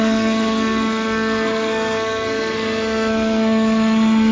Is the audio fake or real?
fake